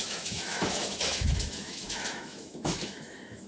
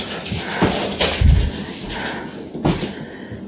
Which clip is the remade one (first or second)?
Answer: first